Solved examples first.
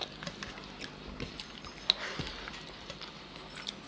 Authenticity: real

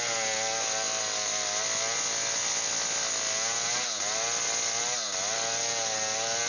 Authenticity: real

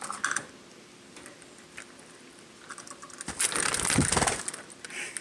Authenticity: real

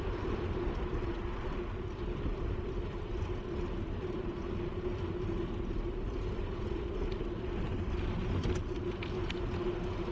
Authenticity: real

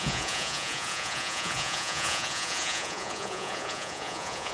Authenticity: fake